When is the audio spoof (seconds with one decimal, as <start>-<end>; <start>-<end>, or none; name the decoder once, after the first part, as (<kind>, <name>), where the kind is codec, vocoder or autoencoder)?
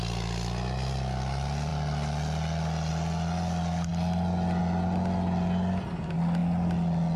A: none